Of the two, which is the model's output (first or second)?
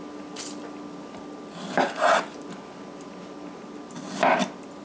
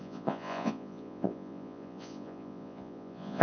second